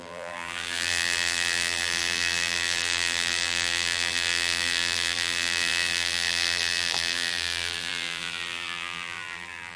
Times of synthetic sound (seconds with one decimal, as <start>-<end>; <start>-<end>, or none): 0.0-9.8